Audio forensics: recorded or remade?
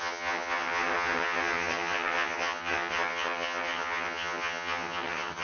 remade